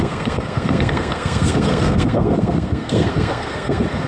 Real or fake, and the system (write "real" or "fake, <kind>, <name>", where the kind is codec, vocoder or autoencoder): fake, codec, SNAC